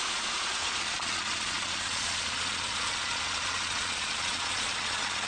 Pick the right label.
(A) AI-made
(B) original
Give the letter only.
A